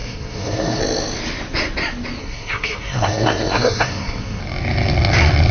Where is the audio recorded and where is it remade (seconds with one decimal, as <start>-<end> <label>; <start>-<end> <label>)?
0.0-0.8 remade; 0.8-2.2 recorded; 2.2-4.4 remade; 4.4-5.5 recorded